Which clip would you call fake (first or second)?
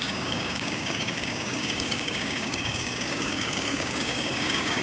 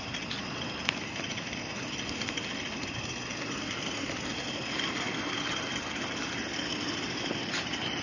first